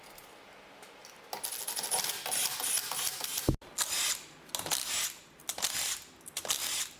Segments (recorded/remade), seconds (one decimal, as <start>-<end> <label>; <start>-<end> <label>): 0.0-7.0 recorded